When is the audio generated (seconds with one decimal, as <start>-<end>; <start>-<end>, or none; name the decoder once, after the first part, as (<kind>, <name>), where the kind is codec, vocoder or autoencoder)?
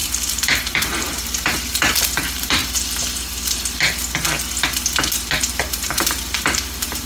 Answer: 0.0-2.6 (vocoder, BigVGAN v2); 5.4-7.1